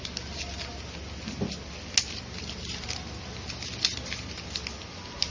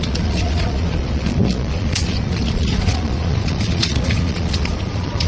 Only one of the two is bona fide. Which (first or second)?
first